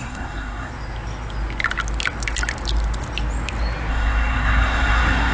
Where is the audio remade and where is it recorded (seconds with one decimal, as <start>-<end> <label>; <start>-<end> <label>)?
0.0-0.7 remade; 0.7-3.9 recorded; 3.9-5.3 remade